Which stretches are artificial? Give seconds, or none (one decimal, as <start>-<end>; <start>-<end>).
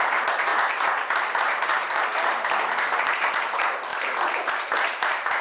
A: 0.0-0.5; 1.2-3.9; 5.0-5.4